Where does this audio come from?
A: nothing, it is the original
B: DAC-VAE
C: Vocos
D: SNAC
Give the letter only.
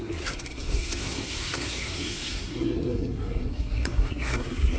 D